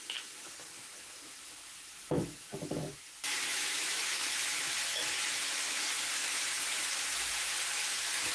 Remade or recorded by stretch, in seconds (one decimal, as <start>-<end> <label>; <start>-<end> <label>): 0.0-8.3 remade